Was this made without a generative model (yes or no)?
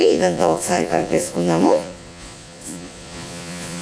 no